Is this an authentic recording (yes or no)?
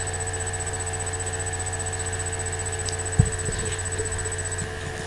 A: yes